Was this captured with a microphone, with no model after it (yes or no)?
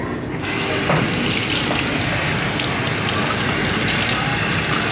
yes